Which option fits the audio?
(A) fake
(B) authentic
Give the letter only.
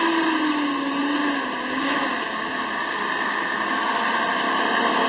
B